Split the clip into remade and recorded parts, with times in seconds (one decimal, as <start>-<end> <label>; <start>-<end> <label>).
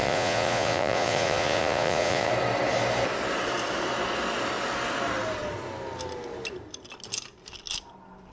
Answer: 0.0-2.3 remade; 2.3-8.3 recorded